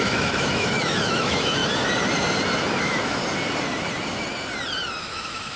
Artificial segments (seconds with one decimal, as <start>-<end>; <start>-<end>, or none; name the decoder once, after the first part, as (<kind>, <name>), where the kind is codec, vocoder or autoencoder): 0.0-1.6 (autoencoder, DAC-VAE); 2.8-3.2; 5.0-5.6